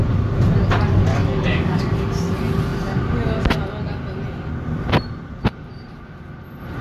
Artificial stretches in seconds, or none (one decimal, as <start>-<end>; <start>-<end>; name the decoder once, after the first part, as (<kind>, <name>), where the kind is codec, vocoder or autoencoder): 1.1-1.8 (codec, DAC)